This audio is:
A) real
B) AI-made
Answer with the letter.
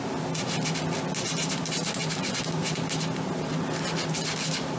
A